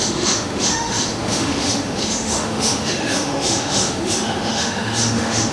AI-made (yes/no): yes